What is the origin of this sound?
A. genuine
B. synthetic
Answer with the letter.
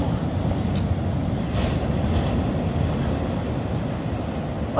A